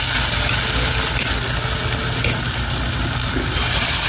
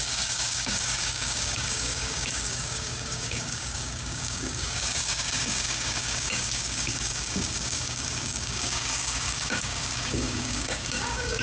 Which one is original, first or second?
first